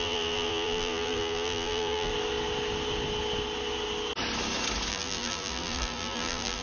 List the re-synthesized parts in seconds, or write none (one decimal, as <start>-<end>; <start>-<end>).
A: 0.0-2.1; 4.9-6.6